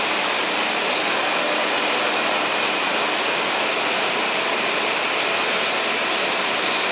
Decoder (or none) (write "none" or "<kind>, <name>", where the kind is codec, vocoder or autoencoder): none